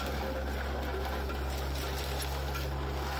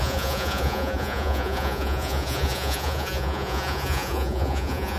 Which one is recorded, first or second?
first